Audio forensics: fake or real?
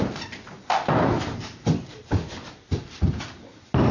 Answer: real